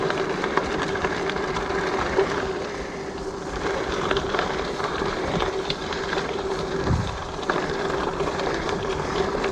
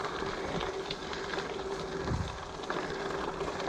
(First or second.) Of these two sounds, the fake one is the first